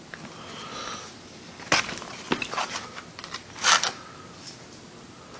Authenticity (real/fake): real